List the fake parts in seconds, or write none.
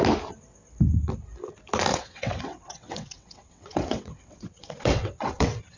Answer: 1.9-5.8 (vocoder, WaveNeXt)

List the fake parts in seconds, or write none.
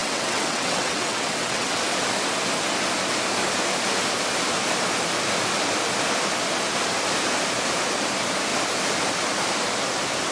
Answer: 0.0-1.8 (vocoder, WaveNeXt)